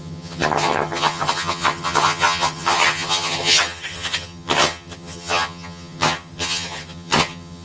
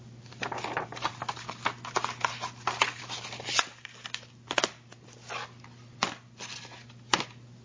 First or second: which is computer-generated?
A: first